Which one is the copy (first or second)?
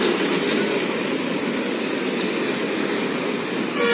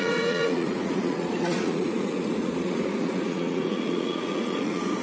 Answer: second